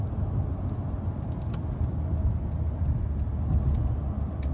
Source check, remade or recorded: recorded